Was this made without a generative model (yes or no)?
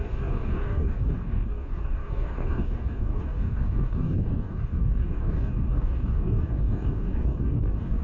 no